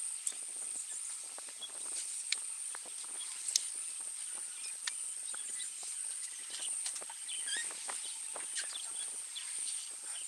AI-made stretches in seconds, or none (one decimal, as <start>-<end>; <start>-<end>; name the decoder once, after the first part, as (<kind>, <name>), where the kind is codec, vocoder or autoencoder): none